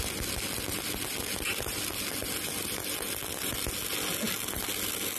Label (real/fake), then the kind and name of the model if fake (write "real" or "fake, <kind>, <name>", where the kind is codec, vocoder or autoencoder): real